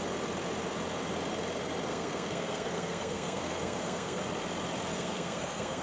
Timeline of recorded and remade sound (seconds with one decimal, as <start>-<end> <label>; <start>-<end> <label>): 0.0-1.9 recorded; 1.9-4.2 remade; 4.2-4.9 recorded; 4.9-5.8 remade